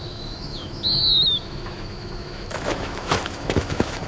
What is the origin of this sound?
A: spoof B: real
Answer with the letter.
A